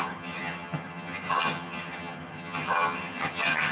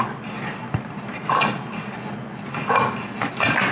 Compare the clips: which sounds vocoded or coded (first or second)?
first